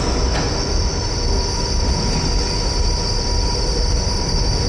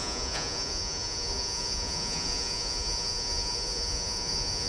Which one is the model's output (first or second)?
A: second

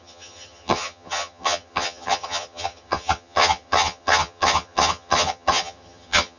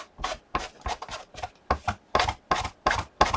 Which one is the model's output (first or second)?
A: first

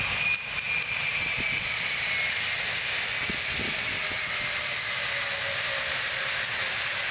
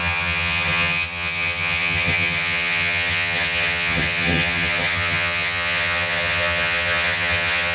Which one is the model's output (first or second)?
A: second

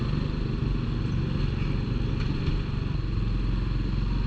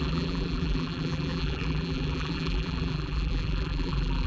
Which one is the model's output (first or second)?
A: second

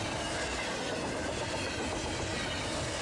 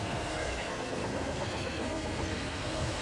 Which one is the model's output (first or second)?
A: second